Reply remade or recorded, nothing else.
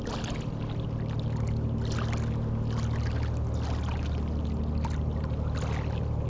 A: recorded